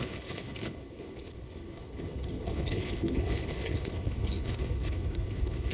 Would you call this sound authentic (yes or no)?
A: no